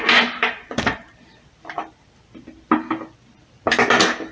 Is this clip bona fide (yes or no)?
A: no